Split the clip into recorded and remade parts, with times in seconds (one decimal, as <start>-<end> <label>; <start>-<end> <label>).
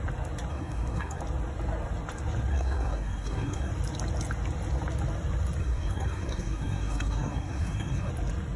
0.0-0.5 recorded; 0.5-1.2 remade; 1.2-2.5 recorded; 2.5-3.7 remade; 3.7-5.6 recorded; 5.6-8.1 remade; 8.1-8.6 recorded